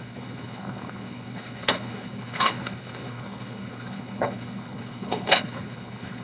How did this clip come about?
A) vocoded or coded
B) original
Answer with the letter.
A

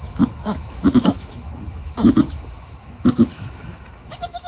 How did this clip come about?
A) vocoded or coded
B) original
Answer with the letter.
A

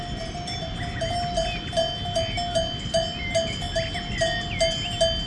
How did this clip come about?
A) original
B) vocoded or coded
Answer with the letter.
A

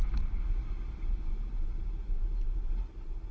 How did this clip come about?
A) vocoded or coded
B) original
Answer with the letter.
A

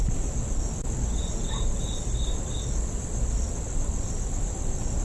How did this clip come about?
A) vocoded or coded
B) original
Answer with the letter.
B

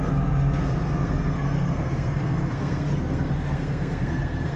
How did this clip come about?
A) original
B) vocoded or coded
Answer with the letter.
B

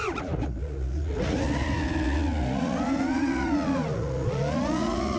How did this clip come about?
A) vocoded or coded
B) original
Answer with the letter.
A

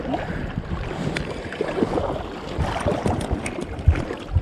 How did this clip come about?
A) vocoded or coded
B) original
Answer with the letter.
B